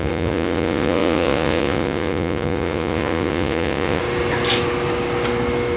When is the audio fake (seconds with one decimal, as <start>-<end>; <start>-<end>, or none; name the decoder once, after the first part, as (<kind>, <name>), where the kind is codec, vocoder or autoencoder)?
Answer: 0.0-4.0 (vocoder, Vocos)